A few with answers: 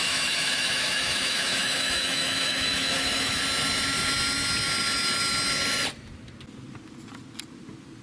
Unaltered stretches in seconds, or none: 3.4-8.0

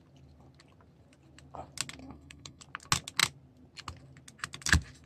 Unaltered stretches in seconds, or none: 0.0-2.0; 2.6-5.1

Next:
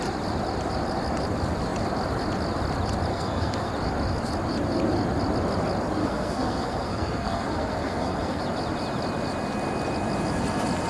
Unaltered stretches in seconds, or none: 0.0-3.1; 3.7-6.0; 8.4-10.9